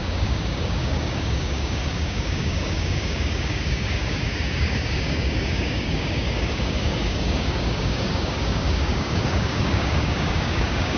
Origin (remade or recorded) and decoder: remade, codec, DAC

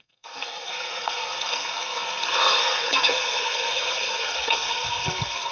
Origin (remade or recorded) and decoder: remade, codec, SNAC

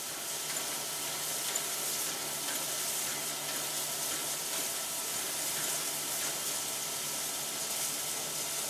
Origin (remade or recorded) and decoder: recorded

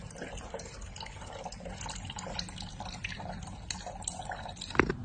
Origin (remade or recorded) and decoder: recorded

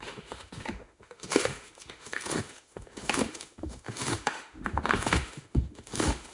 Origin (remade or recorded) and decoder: remade, autoencoder, DAC-VAE